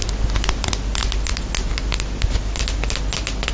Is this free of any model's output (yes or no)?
yes